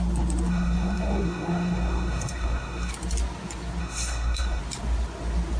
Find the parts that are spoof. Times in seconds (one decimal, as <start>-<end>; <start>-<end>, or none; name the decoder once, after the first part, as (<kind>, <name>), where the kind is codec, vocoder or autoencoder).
0.5-2.9 (codec, SNAC); 3.8-4.6